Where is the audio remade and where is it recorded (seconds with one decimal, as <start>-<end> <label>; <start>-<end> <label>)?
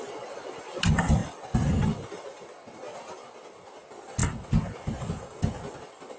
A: 0.0-6.2 recorded